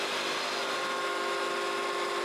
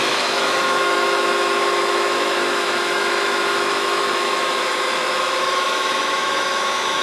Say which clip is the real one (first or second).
first